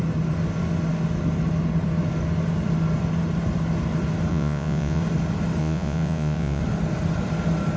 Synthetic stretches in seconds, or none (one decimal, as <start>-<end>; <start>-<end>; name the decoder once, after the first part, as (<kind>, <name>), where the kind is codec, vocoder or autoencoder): 4.3-5.0 (vocoder, Vocos); 5.6-6.6

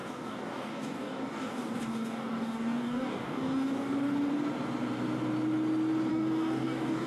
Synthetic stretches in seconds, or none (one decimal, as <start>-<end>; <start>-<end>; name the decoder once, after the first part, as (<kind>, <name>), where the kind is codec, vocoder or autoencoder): 0.0-4.3 (codec, DAC); 6.1-7.1

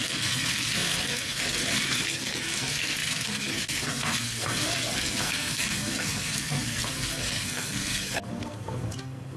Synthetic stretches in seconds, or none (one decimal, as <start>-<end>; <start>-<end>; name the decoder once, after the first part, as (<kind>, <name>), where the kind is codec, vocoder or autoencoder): 0.0-9.4 (codec, SNAC)

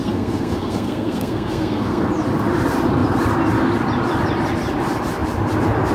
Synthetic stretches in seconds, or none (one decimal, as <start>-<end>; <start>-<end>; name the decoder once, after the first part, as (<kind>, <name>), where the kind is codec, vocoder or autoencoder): 0.0-2.1 (codec, SNAC)